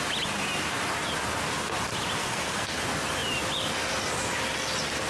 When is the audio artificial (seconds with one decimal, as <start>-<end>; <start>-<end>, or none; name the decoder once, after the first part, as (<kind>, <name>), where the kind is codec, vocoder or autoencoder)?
2.2-2.8 (codec, SNAC)

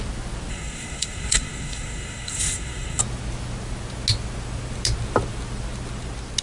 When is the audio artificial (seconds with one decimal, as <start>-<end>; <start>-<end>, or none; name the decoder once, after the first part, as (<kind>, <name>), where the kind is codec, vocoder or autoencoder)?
0.5-3.0 (codec, SNAC)

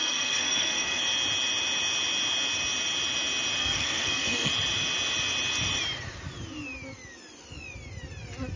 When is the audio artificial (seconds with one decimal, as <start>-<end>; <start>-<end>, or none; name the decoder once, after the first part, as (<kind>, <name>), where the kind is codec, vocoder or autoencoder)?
0.0-1.0 (codec, SNAC); 3.6-4.5

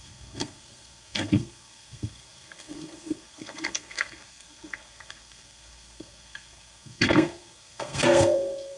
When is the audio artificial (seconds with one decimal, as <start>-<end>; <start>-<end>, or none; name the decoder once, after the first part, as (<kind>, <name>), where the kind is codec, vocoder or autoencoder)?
0.0-8.8 (codec, SNAC)